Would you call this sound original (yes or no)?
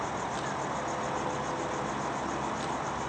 yes